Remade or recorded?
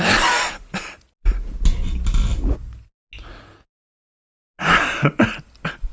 recorded